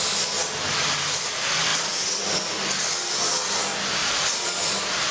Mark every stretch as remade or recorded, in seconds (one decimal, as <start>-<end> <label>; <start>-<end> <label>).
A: 0.0-1.7 recorded; 1.7-2.8 remade; 2.8-4.0 recorded; 4.0-5.1 remade